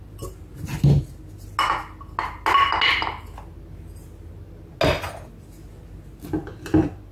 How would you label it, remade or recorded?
recorded